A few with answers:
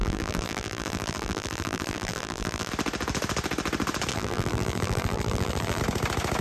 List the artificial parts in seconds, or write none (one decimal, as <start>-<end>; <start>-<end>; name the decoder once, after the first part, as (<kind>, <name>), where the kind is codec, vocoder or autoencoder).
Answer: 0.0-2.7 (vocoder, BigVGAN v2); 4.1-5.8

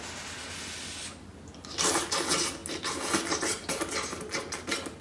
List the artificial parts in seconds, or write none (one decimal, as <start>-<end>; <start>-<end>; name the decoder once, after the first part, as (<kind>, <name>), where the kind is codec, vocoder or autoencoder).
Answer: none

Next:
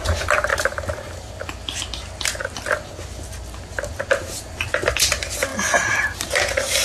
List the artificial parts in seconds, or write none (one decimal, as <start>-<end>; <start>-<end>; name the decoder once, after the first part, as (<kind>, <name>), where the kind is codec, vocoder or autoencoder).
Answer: 0.5-1.2 (vocoder, BigVGAN v2)